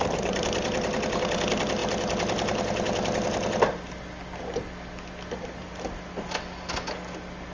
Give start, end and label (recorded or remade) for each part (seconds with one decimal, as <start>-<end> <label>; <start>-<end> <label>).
0.0-7.5 recorded